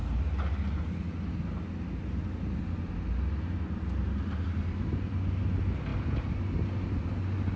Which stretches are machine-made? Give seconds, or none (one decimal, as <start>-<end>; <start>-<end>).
none